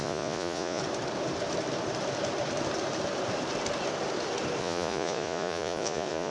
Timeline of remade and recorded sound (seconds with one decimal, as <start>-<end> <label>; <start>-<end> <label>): 0.0-0.8 remade; 0.8-4.6 recorded; 4.6-6.3 remade